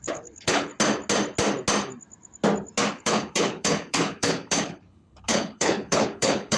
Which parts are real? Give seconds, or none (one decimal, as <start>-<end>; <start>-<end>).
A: 0.7-2.9